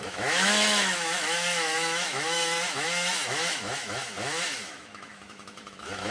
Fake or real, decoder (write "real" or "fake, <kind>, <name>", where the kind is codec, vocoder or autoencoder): fake, autoencoder, DAC-VAE